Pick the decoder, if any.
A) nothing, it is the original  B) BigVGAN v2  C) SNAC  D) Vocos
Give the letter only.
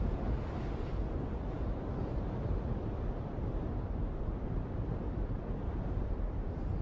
A